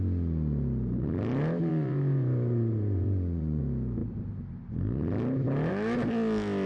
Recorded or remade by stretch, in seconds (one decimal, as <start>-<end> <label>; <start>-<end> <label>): 0.0-1.7 recorded; 1.7-3.6 remade; 3.6-6.7 recorded